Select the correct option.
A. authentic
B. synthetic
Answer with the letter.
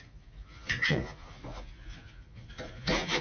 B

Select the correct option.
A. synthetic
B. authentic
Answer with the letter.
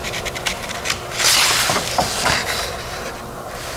A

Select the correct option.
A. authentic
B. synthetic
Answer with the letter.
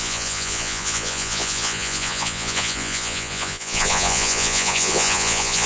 B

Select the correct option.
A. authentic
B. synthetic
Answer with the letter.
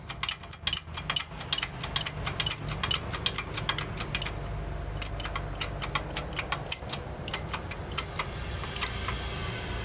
A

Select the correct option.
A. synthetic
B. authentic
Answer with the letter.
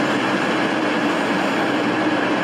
B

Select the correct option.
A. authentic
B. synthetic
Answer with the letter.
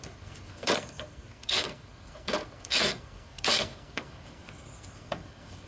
B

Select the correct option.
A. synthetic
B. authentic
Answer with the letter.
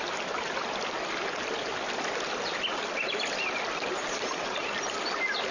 B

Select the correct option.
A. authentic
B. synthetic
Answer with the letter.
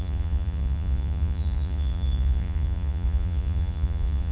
B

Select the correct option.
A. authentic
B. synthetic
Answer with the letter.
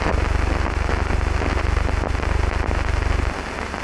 A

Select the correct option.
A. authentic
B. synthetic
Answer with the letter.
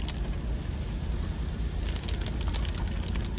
A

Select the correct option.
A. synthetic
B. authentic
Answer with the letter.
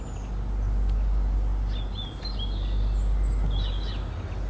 B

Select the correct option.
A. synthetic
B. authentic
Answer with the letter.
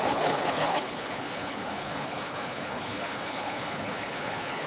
A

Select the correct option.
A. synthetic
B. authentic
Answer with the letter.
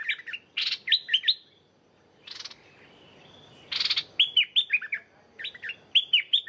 B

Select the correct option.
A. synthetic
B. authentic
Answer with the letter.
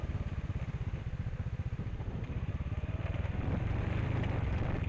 B